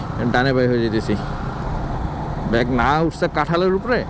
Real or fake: real